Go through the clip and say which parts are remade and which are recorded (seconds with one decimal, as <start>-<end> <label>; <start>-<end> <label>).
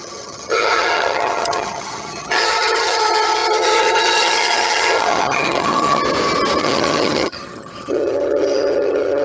0.0-6.0 remade; 6.0-6.6 recorded; 6.6-9.2 remade